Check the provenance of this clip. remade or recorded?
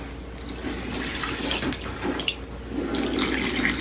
recorded